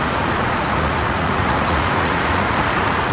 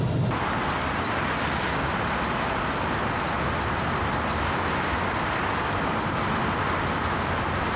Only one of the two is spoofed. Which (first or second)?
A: first